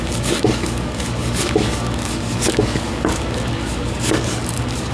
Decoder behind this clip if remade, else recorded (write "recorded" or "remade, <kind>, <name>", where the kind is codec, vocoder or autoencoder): remade, codec, DAC